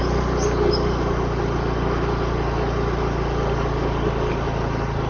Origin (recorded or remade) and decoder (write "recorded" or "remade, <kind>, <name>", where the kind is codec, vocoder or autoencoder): recorded